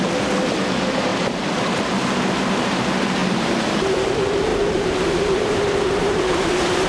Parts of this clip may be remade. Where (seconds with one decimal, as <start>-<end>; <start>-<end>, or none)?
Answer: 1.1-2.8; 3.2-4.1; 4.5-6.9